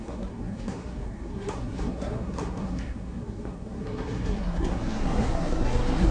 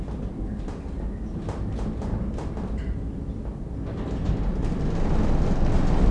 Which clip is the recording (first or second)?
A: second